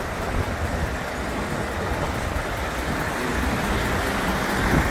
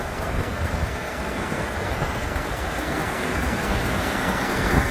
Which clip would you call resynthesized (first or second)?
second